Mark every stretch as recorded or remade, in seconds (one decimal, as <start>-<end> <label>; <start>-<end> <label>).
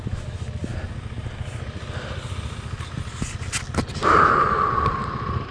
0.0-5.5 recorded